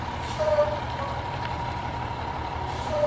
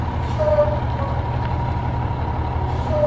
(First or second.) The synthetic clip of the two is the first